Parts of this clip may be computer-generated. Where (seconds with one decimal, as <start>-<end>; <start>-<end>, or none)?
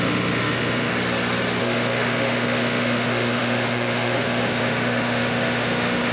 0.0-0.9; 1.6-6.1